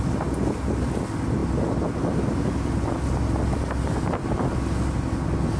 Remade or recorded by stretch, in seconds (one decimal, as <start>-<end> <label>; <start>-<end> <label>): 0.0-5.6 recorded